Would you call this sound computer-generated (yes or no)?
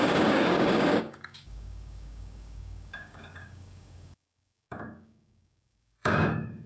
yes